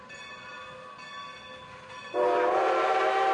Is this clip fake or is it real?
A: real